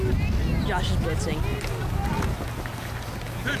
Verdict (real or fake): real